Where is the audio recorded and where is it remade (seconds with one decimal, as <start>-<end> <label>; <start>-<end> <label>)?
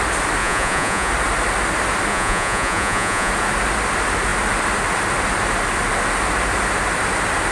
0.0-0.4 recorded; 0.4-1.1 remade; 1.1-2.1 recorded; 2.1-3.3 remade; 3.3-7.5 recorded